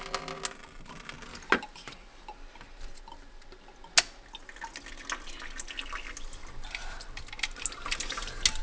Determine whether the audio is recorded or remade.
recorded